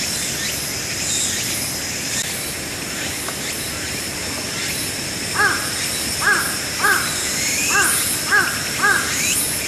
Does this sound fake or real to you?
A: real